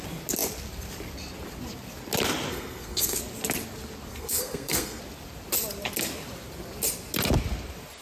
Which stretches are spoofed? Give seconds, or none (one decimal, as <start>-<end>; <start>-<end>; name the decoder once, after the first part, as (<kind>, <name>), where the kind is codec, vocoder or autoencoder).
2.5-3.2 (codec, SNAC); 4.1-5.0